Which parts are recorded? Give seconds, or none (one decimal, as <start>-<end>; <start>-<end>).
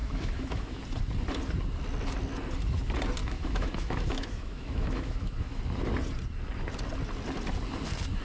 0.8-3.2; 5.6-8.2